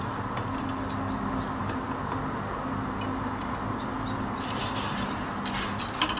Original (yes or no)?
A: yes